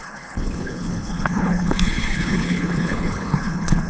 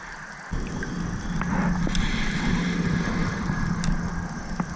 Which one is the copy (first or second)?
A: first